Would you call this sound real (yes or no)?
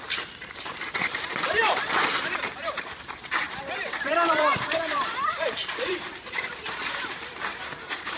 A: no